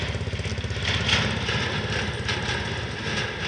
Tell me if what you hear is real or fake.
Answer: real